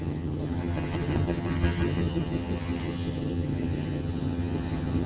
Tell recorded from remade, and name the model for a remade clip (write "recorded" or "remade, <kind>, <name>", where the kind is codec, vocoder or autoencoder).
remade, vocoder, HiFi-GAN